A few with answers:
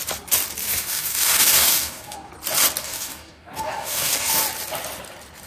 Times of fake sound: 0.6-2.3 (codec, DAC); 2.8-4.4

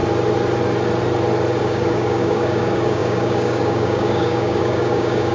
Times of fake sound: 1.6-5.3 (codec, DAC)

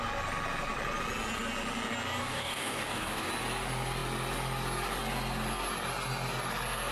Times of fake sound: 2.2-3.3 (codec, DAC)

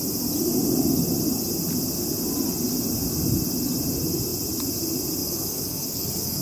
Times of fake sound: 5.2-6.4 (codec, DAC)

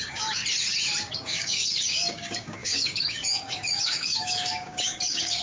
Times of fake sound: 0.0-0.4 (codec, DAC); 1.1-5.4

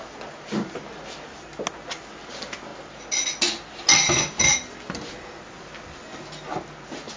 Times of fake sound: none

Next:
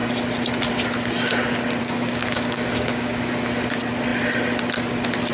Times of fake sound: 1.8-3.3 (codec, DAC)

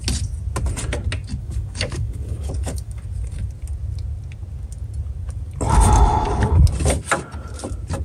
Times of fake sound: 1.4-3.0 (codec, DAC)